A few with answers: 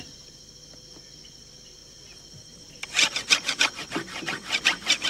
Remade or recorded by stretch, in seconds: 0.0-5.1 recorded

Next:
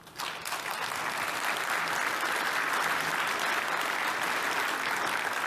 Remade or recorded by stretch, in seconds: 0.0-5.5 recorded

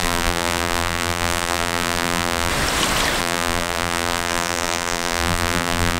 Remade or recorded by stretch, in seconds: 0.0-2.5 remade; 2.5-3.2 recorded; 3.2-6.0 remade

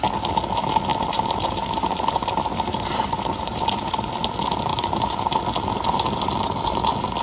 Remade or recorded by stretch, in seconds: 0.0-0.9 recorded; 0.9-4.3 remade; 4.3-4.7 recorded; 4.7-5.3 remade; 5.3-7.2 recorded

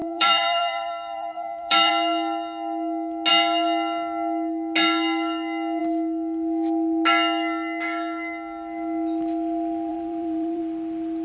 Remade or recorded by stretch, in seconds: 0.0-1.9 remade; 1.9-9.9 recorded; 9.9-10.6 remade; 10.6-11.2 recorded

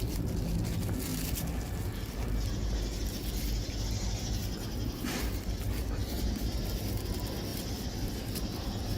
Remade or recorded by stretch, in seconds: 0.0-6.0 recorded; 6.0-6.5 remade; 6.5-7.5 recorded; 7.5-8.4 remade; 8.4-9.0 recorded

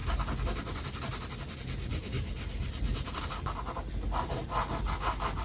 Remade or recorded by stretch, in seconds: 0.0-5.4 recorded